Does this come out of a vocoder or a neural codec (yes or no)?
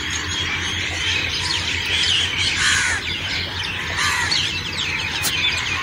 yes